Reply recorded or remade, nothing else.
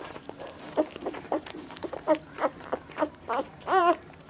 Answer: remade